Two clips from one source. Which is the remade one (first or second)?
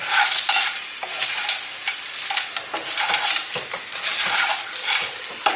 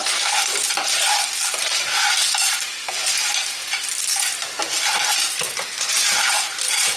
second